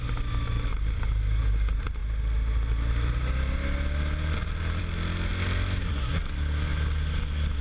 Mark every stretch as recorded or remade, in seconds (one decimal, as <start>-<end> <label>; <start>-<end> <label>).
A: 0.0-7.6 recorded